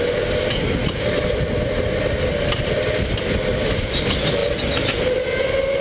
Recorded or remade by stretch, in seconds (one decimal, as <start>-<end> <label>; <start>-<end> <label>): 0.0-5.8 recorded